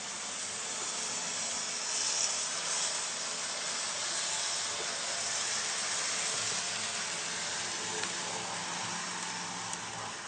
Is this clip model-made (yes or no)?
no